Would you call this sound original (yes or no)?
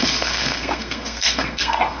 no